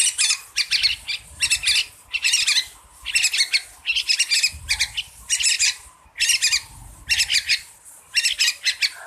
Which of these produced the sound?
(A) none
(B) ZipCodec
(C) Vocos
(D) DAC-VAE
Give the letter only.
A